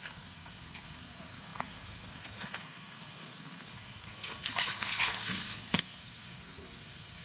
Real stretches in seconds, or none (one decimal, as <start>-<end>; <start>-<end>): none